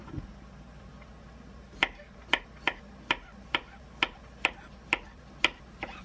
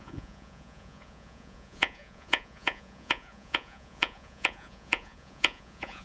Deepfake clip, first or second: second